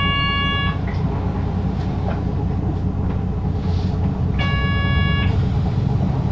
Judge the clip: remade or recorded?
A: recorded